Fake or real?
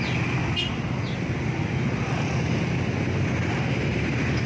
real